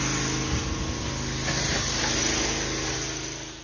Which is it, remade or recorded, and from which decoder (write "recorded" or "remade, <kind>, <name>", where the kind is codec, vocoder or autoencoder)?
recorded